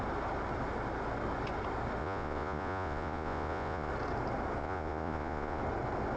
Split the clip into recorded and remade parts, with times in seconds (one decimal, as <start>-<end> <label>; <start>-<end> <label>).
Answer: 0.0-2.0 recorded; 2.0-3.9 remade; 3.9-4.6 recorded; 4.6-5.6 remade; 5.6-6.2 recorded

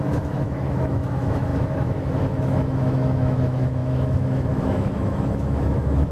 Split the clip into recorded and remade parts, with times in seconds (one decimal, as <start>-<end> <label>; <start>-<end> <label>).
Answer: 0.0-6.1 remade

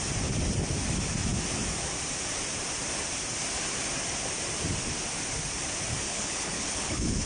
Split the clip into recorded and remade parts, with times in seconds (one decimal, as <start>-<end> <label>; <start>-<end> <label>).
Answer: 0.0-6.1 recorded; 6.1-7.3 remade

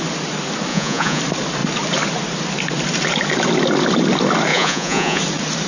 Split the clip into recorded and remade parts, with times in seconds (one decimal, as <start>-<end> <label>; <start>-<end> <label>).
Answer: 0.0-0.7 recorded; 0.7-1.2 remade; 1.2-4.5 recorded; 4.5-5.2 remade; 5.2-5.7 recorded